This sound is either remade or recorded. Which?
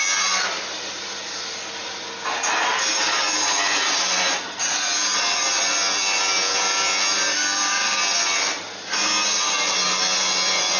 recorded